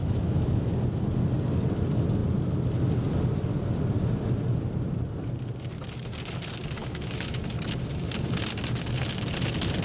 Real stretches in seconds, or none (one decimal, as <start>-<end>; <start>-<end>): 0.7-6.8; 7.4-9.8

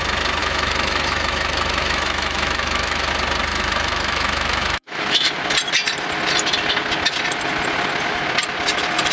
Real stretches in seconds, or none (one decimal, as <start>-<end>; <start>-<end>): 0.0-0.4; 3.1-3.5; 5.3-9.1

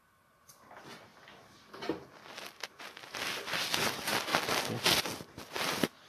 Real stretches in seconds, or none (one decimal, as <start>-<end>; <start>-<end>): 0.0-6.1

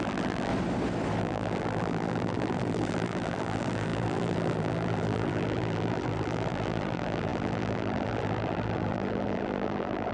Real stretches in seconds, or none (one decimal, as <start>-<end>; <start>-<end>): 0.5-1.2

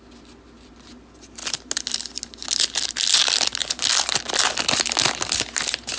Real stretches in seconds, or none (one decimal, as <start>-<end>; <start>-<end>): 0.0-6.0

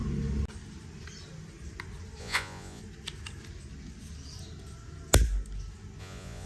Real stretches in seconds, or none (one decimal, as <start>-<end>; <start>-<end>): 0.0-2.2; 2.8-6.0

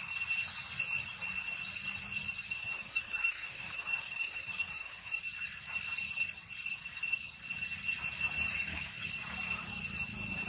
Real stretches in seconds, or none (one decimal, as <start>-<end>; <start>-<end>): 0.0-2.6; 5.2-8.5; 9.1-10.5